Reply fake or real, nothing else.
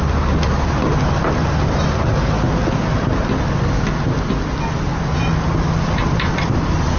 real